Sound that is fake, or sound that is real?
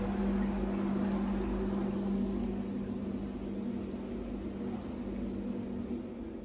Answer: real